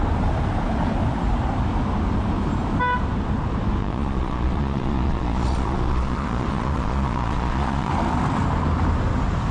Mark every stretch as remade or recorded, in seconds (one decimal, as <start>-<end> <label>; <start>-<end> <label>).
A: 0.0-3.8 recorded; 3.8-7.9 remade; 7.9-9.5 recorded